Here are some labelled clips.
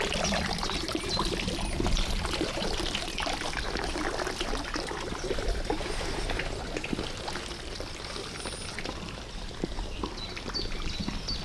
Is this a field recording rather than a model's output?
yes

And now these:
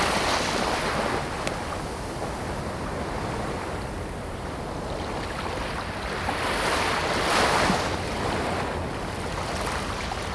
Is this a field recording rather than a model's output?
yes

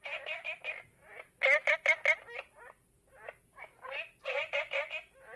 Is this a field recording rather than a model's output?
yes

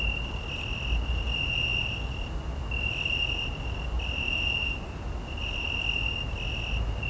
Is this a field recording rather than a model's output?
yes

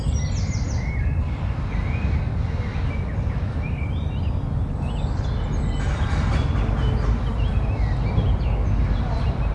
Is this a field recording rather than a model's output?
yes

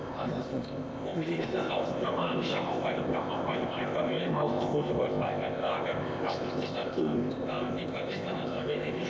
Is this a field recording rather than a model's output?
no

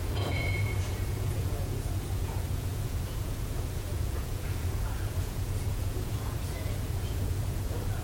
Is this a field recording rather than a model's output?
no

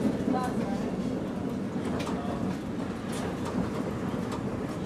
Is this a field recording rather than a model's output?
yes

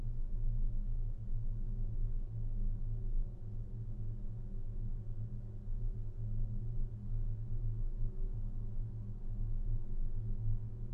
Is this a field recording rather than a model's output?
yes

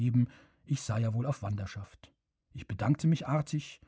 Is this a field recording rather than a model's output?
no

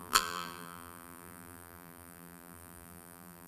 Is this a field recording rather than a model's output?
no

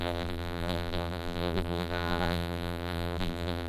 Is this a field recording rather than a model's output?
no